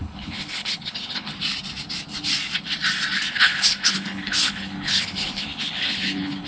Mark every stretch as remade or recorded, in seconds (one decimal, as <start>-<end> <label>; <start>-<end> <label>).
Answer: 0.0-1.3 remade; 1.3-3.3 recorded; 3.3-6.5 remade